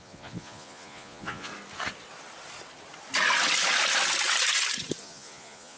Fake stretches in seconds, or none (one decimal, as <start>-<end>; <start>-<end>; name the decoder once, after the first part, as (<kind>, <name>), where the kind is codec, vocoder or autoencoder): 0.0-1.5 (vocoder, Vocos); 5.0-5.8